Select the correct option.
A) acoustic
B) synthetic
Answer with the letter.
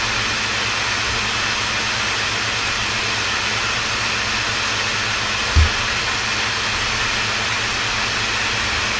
A